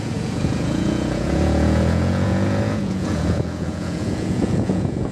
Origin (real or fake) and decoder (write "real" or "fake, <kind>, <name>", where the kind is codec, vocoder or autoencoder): fake, vocoder, Vocos